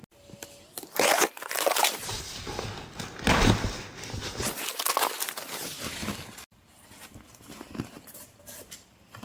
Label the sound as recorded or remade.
recorded